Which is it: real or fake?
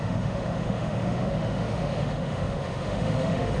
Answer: fake